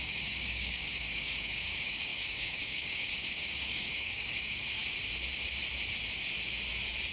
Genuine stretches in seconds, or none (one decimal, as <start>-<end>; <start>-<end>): 4.8-7.1